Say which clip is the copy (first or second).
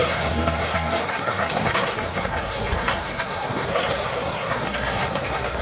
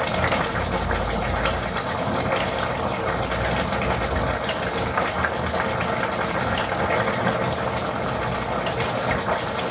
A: first